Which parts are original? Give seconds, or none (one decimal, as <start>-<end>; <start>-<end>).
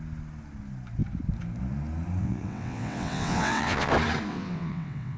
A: 0.0-2.2; 3.9-4.3